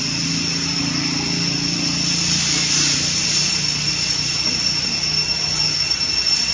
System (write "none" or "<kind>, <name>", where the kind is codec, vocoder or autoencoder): none